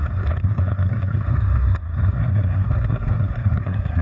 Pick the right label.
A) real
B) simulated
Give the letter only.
B